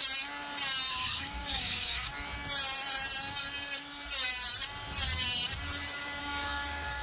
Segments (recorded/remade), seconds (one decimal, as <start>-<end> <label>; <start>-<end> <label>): 0.0-0.9 recorded; 0.9-2.1 remade; 2.1-6.2 recorded; 6.2-7.0 remade